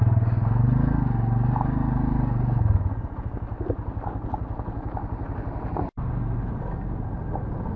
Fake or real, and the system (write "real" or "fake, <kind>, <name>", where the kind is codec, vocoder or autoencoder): real